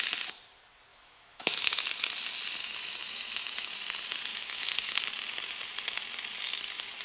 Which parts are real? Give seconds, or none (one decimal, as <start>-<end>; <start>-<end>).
0.0-0.9; 1.9-2.6; 3.7-4.3; 5.0-7.0